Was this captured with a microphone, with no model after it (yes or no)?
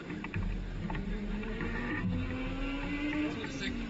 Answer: yes